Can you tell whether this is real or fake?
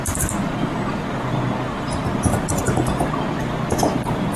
real